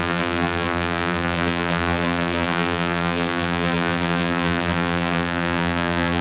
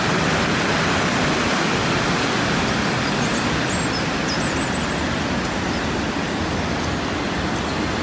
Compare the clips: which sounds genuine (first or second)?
second